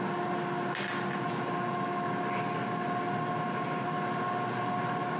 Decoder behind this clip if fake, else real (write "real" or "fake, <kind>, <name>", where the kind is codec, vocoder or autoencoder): real